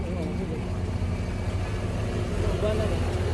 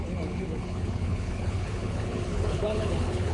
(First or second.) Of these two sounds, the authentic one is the first